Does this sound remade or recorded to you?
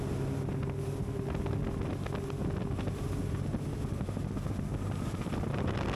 recorded